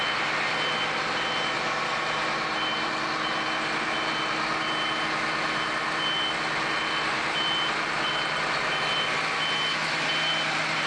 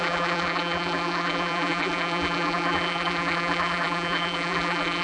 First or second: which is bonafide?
first